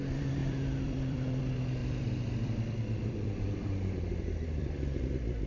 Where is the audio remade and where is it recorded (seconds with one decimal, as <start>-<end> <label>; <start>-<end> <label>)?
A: 0.0-0.4 recorded; 0.4-1.4 remade; 1.4-1.8 recorded; 1.8-5.1 remade; 5.1-5.5 recorded